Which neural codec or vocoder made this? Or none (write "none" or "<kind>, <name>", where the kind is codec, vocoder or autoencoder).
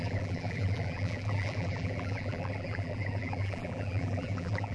vocoder, BigVGAN v2